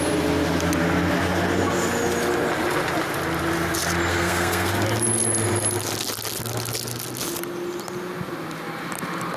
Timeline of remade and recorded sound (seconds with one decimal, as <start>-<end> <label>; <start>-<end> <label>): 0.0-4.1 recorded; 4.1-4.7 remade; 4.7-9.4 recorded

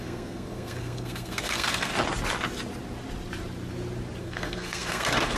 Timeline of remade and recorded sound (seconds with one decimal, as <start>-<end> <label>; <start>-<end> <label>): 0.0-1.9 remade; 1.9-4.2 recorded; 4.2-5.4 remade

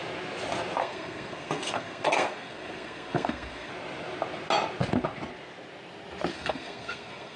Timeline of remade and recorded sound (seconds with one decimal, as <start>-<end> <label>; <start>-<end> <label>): 0.0-0.8 recorded; 0.8-3.7 remade; 3.7-6.3 recorded; 6.3-7.4 remade

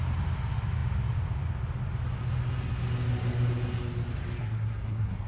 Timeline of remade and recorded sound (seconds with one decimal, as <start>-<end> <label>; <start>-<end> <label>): 0.0-4.4 recorded; 4.4-5.3 remade

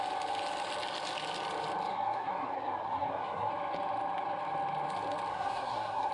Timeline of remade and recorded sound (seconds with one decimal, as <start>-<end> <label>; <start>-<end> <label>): 0.0-1.9 recorded; 1.9-3.5 remade; 3.5-5.3 recorded; 5.3-6.1 remade

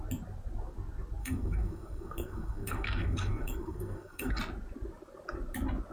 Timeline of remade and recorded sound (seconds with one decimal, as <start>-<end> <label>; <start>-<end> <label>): 0.0-1.2 recorded; 1.2-4.4 remade; 4.4-5.9 recorded

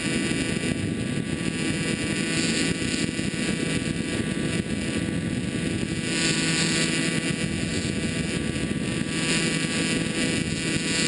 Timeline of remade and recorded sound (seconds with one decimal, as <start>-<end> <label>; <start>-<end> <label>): 0.0-11.1 recorded

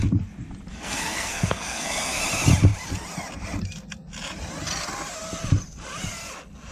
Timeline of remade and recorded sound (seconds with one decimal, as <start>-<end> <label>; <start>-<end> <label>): 0.0-0.7 recorded; 0.7-2.2 remade; 2.2-6.7 recorded